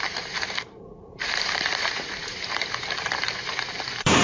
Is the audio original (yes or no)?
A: no